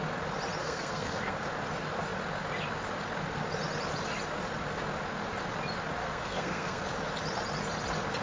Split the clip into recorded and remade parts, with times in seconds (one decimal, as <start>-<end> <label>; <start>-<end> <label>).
0.0-0.6 recorded; 0.6-1.4 remade; 1.4-6.0 recorded; 6.0-6.8 remade; 6.8-8.2 recorded